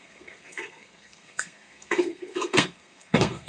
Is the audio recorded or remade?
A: remade